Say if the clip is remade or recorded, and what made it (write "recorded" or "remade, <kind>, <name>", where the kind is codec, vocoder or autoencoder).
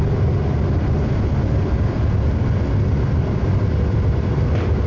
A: recorded